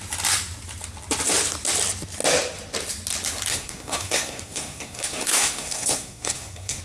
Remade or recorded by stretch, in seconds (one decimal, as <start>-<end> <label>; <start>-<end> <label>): 0.0-3.5 recorded; 3.5-6.8 remade